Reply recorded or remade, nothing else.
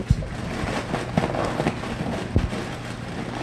recorded